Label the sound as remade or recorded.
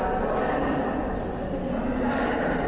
recorded